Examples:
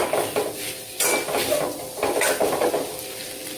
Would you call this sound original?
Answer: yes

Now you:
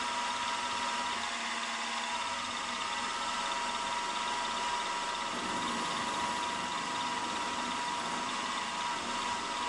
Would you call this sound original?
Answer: yes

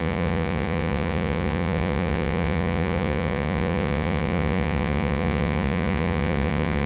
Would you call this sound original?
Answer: no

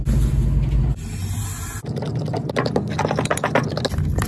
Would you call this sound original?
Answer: yes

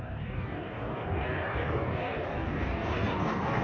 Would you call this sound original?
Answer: no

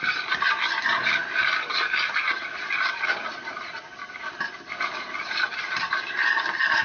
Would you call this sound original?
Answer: no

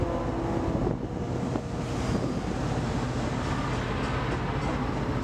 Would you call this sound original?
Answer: yes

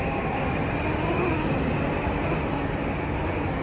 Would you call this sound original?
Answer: yes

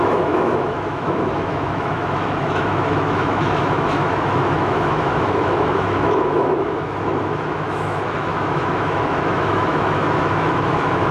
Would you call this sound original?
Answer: no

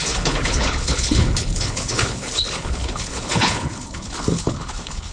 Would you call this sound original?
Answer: no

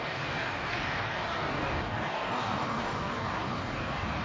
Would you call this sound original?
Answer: no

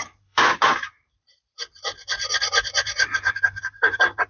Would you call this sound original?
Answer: no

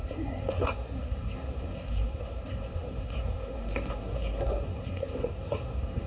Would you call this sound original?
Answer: no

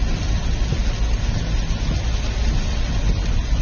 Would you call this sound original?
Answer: yes